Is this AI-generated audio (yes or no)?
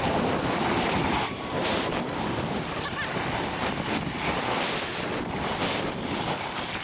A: no